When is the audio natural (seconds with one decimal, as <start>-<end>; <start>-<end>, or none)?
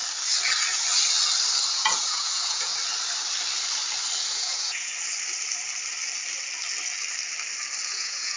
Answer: 0.0-1.7; 2.7-4.3; 4.9-7.9